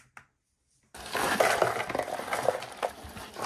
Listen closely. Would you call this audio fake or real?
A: real